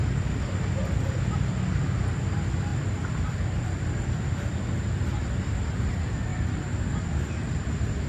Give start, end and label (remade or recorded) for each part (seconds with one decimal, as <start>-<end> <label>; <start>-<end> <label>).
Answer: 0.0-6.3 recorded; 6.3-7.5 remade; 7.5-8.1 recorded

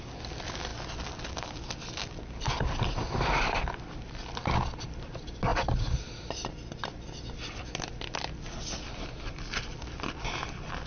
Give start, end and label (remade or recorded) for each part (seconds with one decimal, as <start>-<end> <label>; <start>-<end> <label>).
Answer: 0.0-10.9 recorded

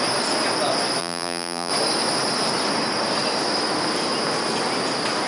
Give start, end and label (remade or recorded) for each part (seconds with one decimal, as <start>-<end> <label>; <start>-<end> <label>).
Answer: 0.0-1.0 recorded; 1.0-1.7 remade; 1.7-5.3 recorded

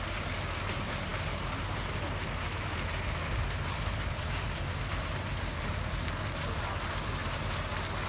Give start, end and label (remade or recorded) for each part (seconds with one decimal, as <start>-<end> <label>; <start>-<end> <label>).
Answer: 0.0-8.1 recorded